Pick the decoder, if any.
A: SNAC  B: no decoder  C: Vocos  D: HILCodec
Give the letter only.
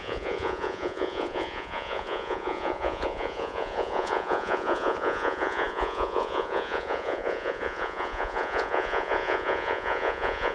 C